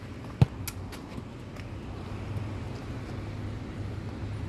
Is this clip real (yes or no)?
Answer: yes